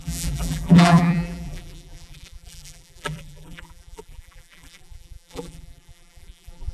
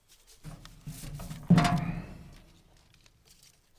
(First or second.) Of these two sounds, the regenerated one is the first